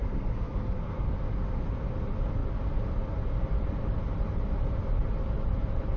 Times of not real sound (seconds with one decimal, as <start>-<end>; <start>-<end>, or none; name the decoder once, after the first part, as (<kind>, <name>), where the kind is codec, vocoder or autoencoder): 0.0-1.1 (codec, SNAC)